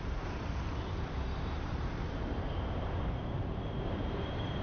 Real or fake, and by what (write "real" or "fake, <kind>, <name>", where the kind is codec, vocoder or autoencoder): fake, vocoder, BigVGAN v2